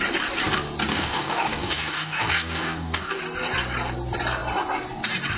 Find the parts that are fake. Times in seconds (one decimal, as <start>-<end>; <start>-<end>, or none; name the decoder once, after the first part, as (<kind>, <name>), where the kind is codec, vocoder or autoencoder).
0.9-3.2 (codec, DAC)